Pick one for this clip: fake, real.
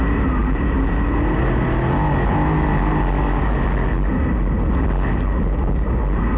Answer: real